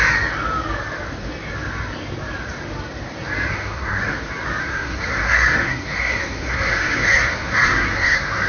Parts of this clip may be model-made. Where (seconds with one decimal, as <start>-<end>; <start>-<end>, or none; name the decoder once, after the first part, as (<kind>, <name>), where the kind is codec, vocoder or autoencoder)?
3.5-4.0 (codec, SNAC); 4.6-8.5